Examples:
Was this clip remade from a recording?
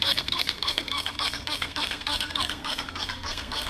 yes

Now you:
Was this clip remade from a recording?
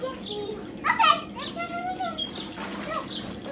no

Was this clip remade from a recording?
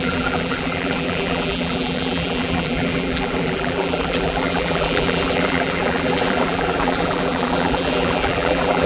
yes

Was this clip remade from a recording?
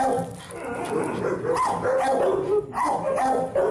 no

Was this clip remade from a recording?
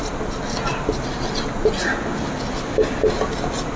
no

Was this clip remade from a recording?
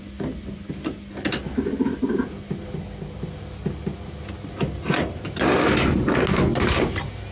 no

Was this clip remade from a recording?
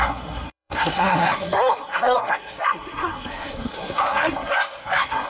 yes